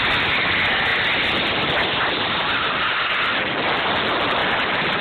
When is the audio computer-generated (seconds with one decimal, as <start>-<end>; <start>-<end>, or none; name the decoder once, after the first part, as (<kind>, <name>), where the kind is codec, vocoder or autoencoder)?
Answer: 0.9-2.4 (vocoder, BigVGAN v2); 4.4-5.0